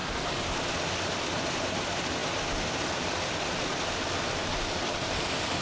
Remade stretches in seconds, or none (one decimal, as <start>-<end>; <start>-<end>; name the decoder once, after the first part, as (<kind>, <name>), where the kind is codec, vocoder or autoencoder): none

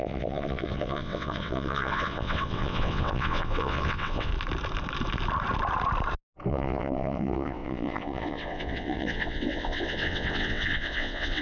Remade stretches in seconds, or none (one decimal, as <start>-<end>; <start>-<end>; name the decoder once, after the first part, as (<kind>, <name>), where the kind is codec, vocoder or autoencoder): 0.0-4.3 (vocoder, WaveNeXt); 6.5-11.4